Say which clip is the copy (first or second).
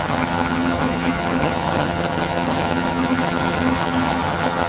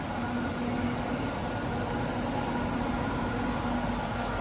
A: first